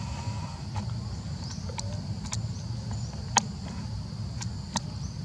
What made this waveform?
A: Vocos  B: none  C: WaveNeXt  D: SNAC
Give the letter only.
B